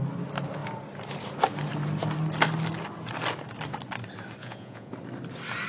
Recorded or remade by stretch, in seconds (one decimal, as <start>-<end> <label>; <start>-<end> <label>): 0.0-4.4 recorded; 4.4-4.9 remade; 4.9-5.7 recorded

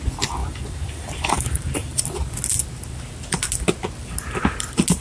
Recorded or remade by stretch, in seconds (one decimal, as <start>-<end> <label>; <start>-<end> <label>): 0.0-0.4 recorded; 0.4-2.0 remade; 2.0-5.0 recorded

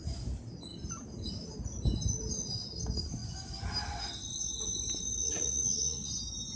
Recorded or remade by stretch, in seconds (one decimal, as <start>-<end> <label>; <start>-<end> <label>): 0.0-5.2 recorded; 5.2-6.1 remade; 6.1-6.6 recorded